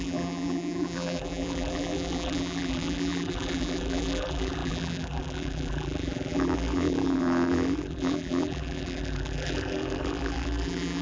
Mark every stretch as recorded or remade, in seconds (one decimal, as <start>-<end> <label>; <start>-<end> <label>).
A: 0.0-11.0 remade